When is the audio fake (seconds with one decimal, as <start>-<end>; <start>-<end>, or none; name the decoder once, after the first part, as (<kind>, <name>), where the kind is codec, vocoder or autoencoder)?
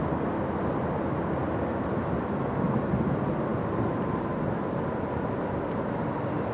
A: none